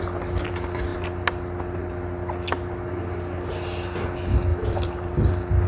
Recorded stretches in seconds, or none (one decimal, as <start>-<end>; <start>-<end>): 0.0-4.5; 5.3-5.7